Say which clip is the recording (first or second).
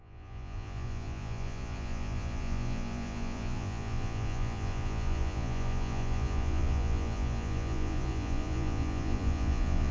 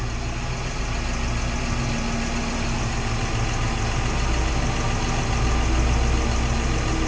second